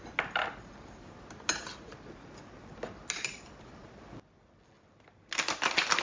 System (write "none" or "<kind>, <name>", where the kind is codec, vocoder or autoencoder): none